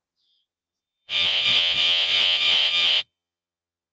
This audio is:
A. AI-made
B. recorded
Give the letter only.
A